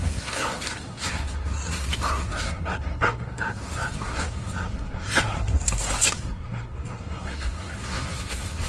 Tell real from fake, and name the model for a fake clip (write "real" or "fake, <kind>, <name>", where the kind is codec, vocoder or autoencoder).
fake, codec, SNAC